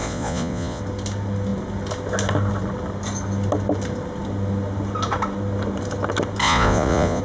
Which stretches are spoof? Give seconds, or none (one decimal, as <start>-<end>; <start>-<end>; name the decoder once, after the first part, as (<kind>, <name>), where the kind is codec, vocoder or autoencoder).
0.0-0.8 (vocoder, Vocos); 6.4-7.2